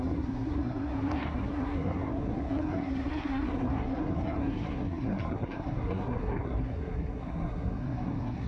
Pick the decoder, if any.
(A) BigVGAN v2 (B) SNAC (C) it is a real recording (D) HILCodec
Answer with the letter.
B